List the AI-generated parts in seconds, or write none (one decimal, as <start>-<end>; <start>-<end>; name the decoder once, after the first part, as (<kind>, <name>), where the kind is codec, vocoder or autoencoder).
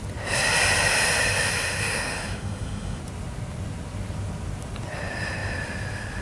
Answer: 1.4-3.0 (autoencoder, DAC-VAE)